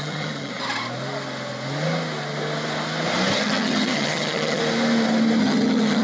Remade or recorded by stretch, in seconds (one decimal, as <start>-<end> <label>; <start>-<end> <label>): 0.0-0.6 remade; 0.6-3.4 recorded; 3.4-4.6 remade; 4.6-5.4 recorded; 5.4-6.0 remade